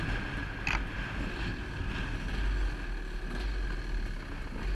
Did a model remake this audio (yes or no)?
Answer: no